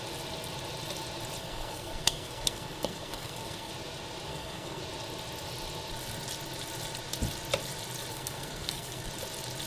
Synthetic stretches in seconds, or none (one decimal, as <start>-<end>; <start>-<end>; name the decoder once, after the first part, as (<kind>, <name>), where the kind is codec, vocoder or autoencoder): 1.4-3.7 (codec, SNAC); 4.3-4.8; 8.1-9.1